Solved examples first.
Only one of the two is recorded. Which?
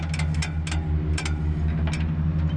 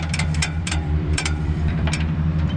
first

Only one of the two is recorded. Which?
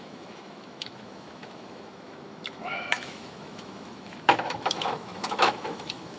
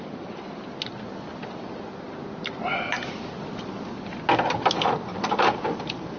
second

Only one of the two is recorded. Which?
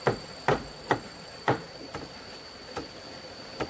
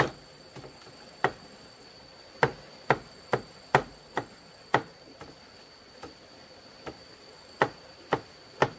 second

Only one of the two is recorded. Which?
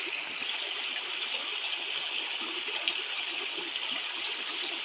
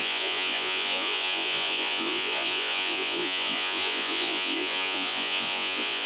first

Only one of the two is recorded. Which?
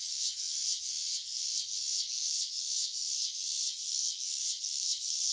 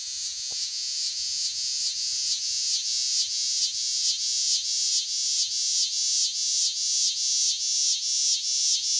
second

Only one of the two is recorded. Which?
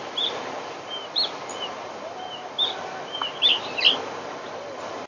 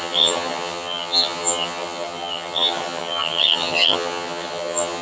first